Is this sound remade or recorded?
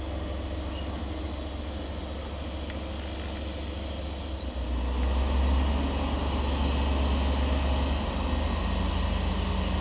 recorded